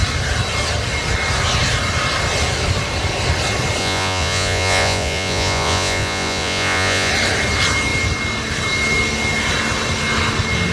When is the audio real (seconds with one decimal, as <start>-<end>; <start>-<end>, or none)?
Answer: 0.0-3.8; 7.1-10.7